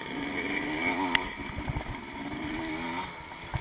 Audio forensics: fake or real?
real